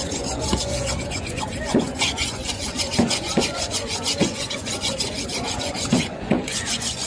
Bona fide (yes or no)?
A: no